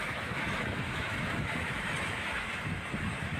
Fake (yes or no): yes